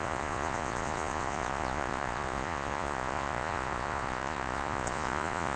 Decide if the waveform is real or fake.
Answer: fake